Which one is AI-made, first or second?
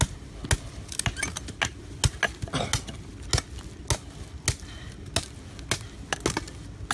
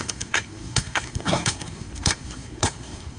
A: second